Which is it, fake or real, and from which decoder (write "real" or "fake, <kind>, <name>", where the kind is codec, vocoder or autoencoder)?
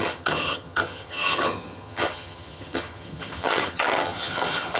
fake, vocoder, HiFi-GAN